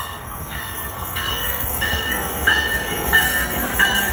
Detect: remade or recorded remade